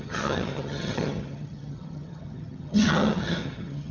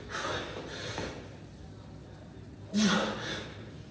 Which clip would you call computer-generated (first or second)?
first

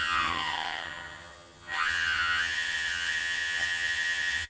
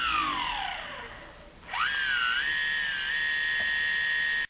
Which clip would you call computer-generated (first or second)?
first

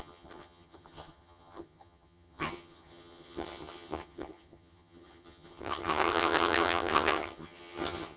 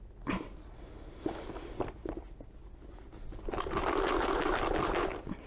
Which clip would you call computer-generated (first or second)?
first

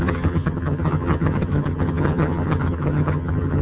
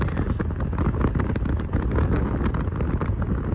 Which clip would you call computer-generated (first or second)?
first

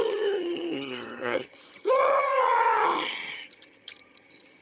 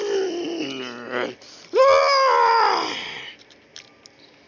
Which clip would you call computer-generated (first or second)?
first